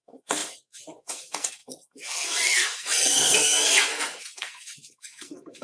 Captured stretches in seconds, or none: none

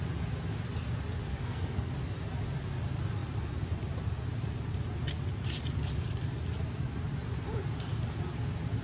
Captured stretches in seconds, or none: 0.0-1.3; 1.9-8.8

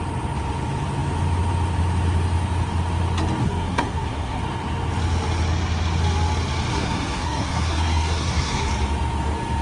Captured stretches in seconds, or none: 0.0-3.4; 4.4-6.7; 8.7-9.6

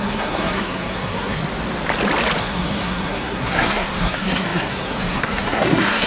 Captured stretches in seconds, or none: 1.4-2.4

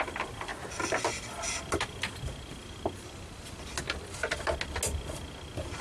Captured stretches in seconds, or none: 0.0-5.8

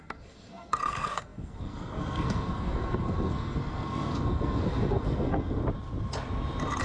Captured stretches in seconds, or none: 5.6-6.8

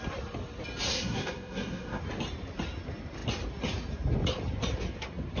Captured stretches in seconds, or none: 0.0-0.9; 2.0-5.4